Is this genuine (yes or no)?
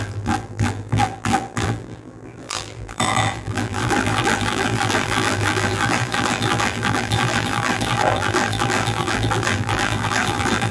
no